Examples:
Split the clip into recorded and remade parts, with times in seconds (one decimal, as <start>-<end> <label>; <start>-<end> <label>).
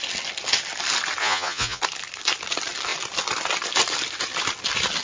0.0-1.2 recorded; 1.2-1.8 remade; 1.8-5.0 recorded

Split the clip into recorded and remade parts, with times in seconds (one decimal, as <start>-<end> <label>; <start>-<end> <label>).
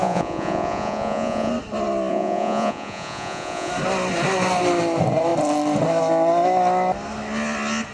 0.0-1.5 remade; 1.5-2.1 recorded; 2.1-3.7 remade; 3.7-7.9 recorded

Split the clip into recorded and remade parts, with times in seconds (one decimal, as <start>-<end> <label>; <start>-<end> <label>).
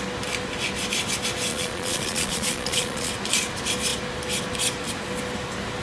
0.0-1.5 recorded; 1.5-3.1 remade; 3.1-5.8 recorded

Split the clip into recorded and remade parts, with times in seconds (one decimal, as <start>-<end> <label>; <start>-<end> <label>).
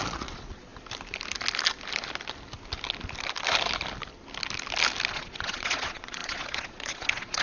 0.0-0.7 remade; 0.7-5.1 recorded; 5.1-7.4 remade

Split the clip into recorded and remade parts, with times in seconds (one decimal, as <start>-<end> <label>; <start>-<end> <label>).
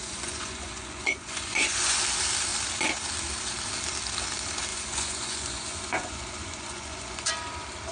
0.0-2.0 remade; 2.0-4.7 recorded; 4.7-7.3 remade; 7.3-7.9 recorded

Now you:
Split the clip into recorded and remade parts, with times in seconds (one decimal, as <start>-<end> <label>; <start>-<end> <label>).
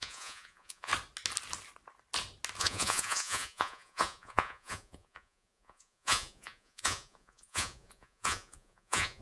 0.0-0.9 remade; 0.9-2.6 recorded; 2.6-9.2 remade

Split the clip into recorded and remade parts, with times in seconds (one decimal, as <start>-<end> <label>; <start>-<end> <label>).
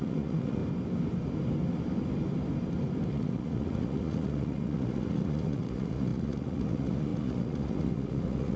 0.0-0.6 remade; 0.6-3.1 recorded; 3.1-8.6 remade